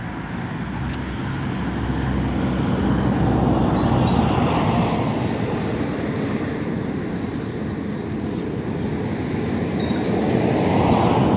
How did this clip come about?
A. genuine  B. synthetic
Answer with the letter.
A